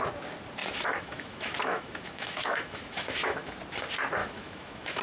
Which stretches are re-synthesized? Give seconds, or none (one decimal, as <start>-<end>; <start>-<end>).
0.6-3.6; 4.2-5.0